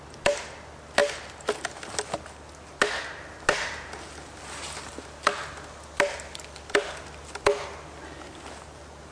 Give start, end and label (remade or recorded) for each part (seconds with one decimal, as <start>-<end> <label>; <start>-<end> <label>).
0.0-9.1 recorded